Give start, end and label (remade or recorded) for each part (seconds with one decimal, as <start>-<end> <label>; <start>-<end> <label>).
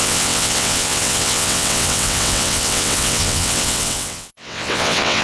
0.0-5.2 remade